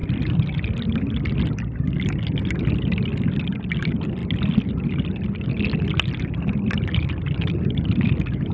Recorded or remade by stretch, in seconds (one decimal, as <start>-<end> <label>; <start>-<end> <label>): 0.0-8.5 recorded